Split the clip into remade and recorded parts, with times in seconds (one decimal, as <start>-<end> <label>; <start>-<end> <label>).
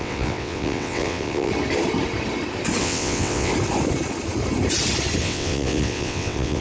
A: 0.0-1.5 remade; 1.5-2.8 recorded; 2.8-3.5 remade; 3.5-5.2 recorded; 5.2-6.6 remade